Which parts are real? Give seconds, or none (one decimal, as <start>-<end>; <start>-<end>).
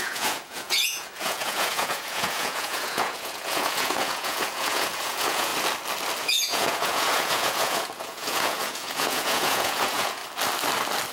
5.5-6.2; 10.2-11.1